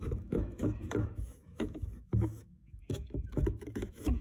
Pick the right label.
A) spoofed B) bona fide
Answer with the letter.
A